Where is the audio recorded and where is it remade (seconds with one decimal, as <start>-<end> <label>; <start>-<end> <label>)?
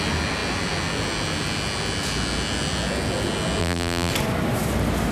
0.0-3.6 recorded; 3.6-4.1 remade; 4.1-5.1 recorded